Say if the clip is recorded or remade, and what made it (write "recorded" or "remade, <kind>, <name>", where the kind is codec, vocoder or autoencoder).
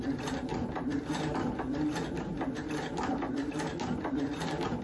recorded